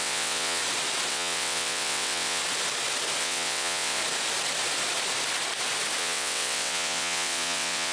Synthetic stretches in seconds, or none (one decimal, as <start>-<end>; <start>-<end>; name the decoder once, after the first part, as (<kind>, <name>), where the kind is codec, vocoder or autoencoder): 0.0-0.6 (vocoder, WaveNeXt); 1.1-2.4; 3.2-4.0; 6.0-7.9